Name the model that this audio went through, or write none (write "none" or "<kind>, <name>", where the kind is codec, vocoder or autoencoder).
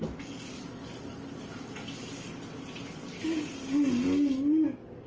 none